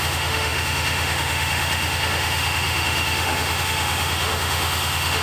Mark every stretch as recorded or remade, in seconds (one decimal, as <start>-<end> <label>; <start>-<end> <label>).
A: 0.0-5.2 remade